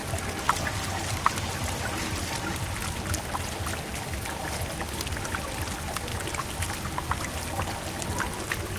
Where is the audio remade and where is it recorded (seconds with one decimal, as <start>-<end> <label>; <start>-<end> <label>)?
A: 0.0-8.8 recorded